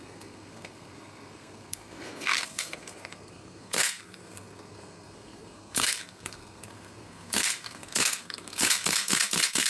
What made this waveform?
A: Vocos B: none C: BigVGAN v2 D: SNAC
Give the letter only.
D